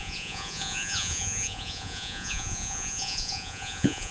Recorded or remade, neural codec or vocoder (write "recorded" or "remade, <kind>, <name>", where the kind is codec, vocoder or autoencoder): remade, vocoder, Vocos